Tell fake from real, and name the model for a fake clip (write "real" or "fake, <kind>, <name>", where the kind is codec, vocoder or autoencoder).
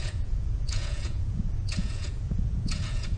fake, vocoder, Vocos